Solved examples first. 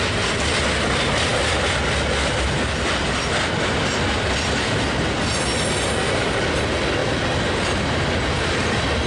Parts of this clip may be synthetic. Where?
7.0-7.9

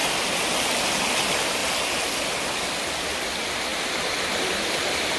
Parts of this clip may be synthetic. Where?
none

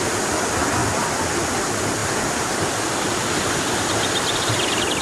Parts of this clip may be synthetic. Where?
0.0-5.0

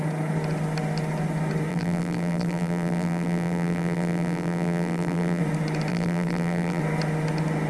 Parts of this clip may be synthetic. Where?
1.7-5.4; 5.9-6.8

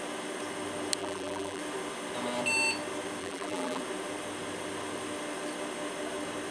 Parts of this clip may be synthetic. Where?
1.0-1.6; 3.2-3.8